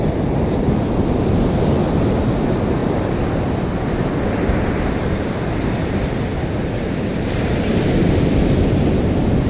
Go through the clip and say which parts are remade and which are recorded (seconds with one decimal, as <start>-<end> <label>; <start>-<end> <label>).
0.0-9.5 recorded

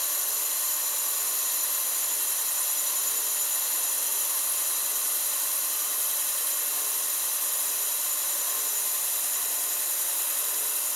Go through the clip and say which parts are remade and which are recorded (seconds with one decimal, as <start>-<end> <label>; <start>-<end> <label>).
0.0-11.0 recorded

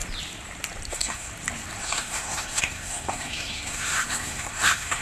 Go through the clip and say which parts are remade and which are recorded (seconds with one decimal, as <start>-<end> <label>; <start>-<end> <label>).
0.0-0.9 recorded; 0.9-1.3 remade; 1.3-1.8 recorded; 1.8-5.0 remade

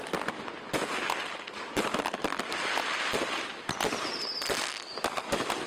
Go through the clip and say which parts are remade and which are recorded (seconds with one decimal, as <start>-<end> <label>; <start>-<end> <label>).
0.0-5.7 recorded

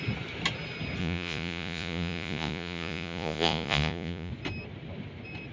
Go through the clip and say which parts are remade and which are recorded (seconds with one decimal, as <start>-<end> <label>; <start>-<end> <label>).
0.0-1.0 recorded; 1.0-4.3 remade; 4.3-5.5 recorded

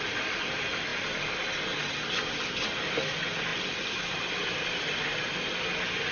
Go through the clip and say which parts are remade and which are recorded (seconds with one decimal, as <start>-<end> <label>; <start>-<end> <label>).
0.0-6.1 recorded

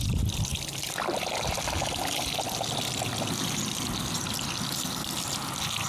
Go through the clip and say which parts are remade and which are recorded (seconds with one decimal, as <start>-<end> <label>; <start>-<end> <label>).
0.0-5.9 recorded

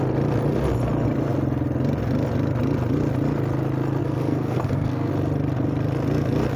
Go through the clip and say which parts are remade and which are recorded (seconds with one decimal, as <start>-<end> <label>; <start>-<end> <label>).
0.0-4.0 recorded; 4.0-5.1 remade; 5.1-6.6 recorded